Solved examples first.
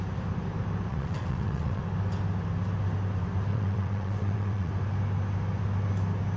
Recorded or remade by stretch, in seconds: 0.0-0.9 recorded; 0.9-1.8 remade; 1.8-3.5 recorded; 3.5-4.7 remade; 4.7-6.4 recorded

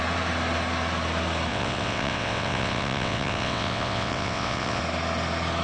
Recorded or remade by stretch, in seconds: 0.0-1.5 recorded; 1.5-4.8 remade; 4.8-5.6 recorded

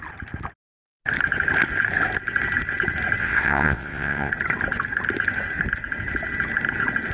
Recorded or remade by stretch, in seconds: 0.0-3.2 recorded; 3.2-4.3 remade; 4.3-7.1 recorded

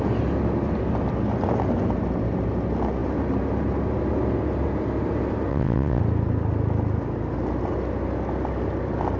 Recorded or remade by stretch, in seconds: 0.0-5.5 recorded; 5.5-6.0 remade; 6.0-9.2 recorded